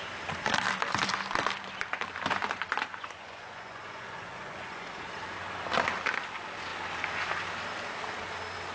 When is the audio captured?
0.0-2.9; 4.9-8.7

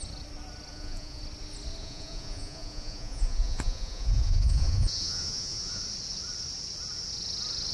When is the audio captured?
0.0-0.7; 1.2-1.8; 5.8-7.7

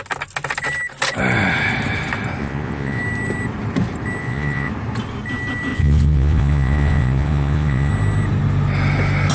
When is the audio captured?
0.0-2.4; 3.0-4.2; 4.7-5.7; 7.9-9.3

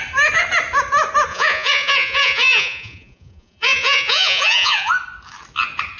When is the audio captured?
0.0-1.3; 4.9-6.0

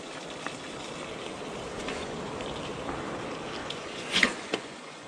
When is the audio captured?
0.0-1.7; 2.2-3.6